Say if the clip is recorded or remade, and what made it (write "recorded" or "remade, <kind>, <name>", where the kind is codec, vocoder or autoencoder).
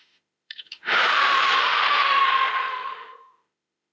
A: remade, autoencoder, DAC-VAE